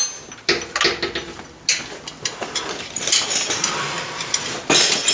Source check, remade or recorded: recorded